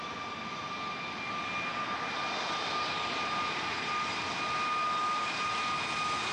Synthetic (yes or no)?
no